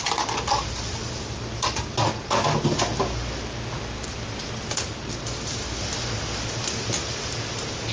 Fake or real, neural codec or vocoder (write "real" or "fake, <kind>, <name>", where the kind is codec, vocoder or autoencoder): real